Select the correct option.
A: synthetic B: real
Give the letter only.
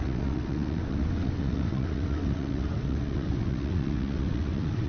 A